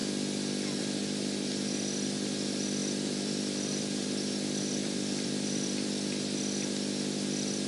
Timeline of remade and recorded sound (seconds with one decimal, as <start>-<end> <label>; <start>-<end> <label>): 0.0-2.8 recorded; 2.8-3.8 remade; 3.8-4.8 recorded; 4.8-5.9 remade; 5.9-7.7 recorded